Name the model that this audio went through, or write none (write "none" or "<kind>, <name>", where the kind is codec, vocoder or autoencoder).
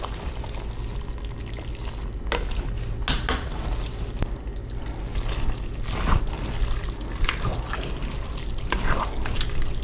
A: none